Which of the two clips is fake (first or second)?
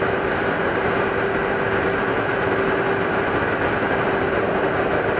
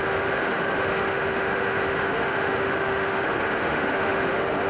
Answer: second